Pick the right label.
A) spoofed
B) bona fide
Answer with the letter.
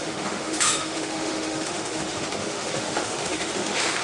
A